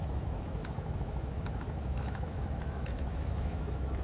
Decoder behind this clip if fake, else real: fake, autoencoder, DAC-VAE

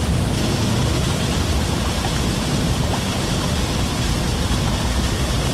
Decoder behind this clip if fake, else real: real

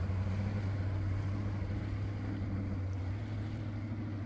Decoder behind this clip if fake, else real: real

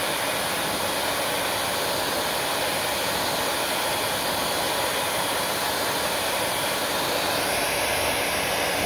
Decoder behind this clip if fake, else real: real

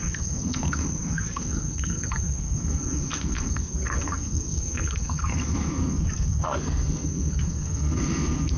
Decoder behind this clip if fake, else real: fake, codec, SNAC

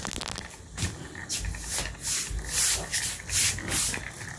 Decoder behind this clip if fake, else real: real